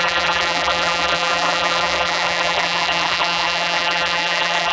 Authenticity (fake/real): fake